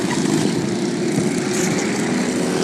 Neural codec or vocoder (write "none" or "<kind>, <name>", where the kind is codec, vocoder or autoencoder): none